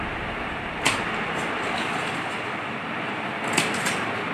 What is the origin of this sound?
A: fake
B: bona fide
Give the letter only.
B